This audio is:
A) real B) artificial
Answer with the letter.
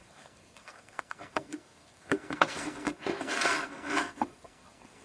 B